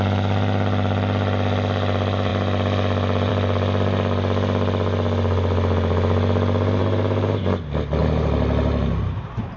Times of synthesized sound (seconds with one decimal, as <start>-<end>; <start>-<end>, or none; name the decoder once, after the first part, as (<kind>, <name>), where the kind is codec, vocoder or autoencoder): 6.8-7.4 (vocoder, BigVGAN v2); 8.0-9.0